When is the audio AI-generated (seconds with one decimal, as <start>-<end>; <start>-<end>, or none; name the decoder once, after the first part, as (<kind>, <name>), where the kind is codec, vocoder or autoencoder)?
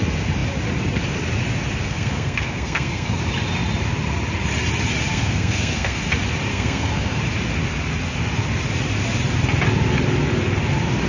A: 1.8-3.2 (codec, SNAC); 5.1-6.0; 6.5-7.2